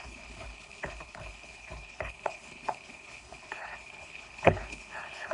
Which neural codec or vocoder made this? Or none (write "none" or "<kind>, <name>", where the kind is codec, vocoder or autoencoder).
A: codec, HILCodec